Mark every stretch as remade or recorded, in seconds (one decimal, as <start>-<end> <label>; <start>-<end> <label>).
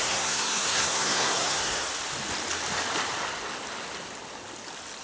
0.0-1.9 remade; 1.9-5.0 recorded